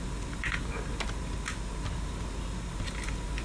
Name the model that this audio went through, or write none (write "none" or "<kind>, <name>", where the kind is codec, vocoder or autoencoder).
none